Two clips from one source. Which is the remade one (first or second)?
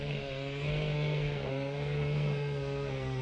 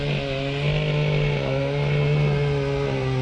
first